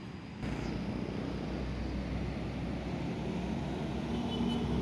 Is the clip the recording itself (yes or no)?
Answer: yes